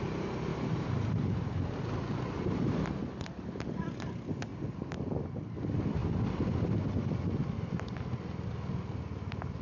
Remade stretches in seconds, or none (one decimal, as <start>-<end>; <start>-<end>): 0.5-3.0; 4.5-5.0